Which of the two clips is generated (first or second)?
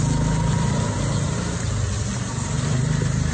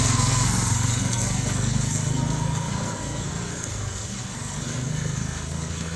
second